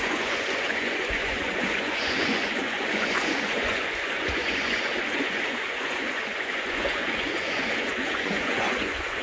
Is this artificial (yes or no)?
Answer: yes